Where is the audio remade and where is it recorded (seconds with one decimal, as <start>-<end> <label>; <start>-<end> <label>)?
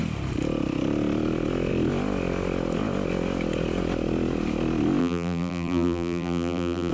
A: 0.0-5.0 recorded; 5.0-6.9 remade